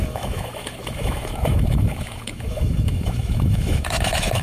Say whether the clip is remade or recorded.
remade